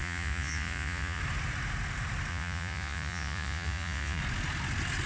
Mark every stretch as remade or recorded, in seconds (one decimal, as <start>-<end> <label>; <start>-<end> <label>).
0.0-1.2 remade; 1.2-2.3 recorded; 2.3-4.2 remade; 4.2-5.1 recorded